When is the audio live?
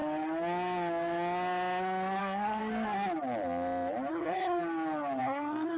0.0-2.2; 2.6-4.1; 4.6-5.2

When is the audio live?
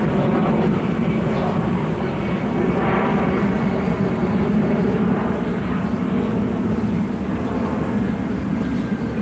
0.0-0.4; 2.2-4.2; 5.3-9.2